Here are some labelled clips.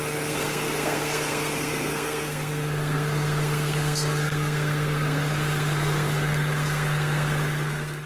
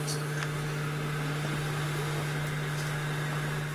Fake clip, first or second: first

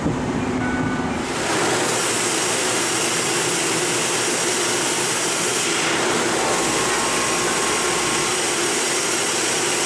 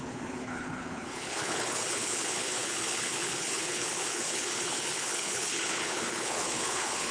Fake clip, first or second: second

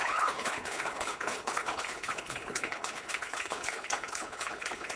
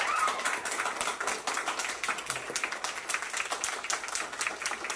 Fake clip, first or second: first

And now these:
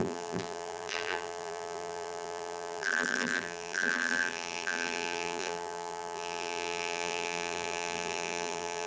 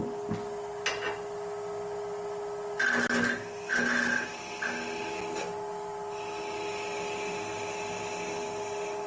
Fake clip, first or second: first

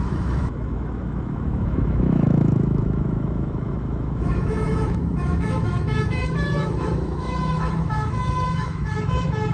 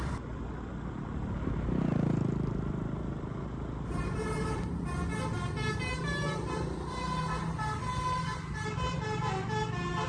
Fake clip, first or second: first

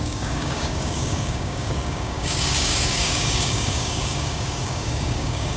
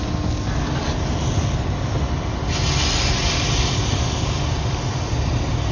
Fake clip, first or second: first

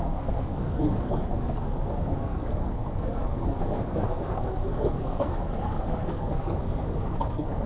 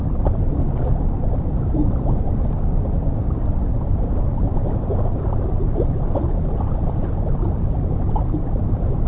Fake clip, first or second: first